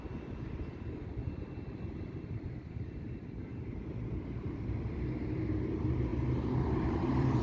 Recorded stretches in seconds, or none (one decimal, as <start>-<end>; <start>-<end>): 6.1-6.9

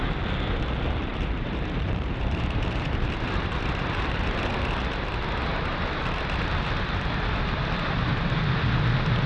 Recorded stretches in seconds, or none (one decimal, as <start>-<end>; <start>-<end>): 0.0-1.1; 4.5-5.5; 6.2-9.3